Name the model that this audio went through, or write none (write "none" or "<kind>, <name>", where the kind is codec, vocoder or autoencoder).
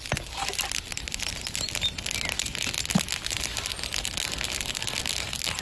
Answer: none